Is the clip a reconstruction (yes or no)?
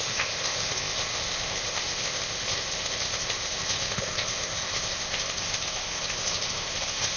yes